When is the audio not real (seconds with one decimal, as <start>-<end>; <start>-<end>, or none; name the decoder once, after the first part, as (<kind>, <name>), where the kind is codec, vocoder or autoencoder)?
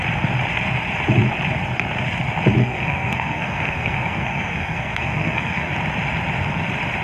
2.6-5.7 (codec, SNAC)